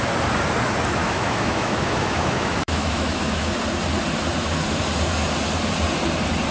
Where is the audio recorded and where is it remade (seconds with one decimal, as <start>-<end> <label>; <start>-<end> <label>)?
0.0-1.0 recorded; 1.0-3.5 remade; 3.5-6.5 recorded